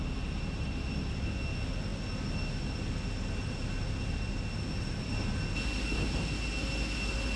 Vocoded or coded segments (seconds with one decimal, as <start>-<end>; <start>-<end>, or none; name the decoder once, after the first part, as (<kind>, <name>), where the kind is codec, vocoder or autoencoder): none